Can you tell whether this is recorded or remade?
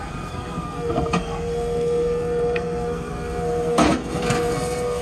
remade